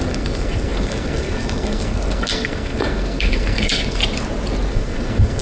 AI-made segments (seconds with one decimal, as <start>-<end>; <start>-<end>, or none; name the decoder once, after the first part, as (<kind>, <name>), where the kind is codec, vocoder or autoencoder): 0.0-4.0 (codec, SNAC); 4.7-5.4